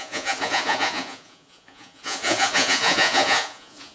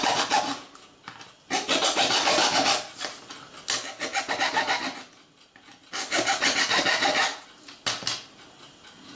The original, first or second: second